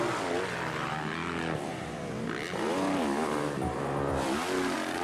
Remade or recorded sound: recorded